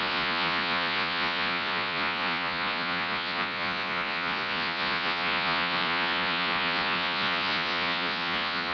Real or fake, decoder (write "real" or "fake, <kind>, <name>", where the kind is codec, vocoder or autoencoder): fake, vocoder, Vocos